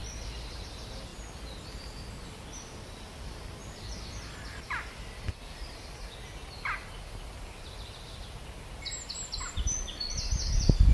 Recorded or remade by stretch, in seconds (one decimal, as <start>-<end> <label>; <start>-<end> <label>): 0.0-10.9 recorded